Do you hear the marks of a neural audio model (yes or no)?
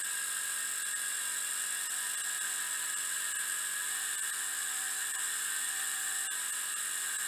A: no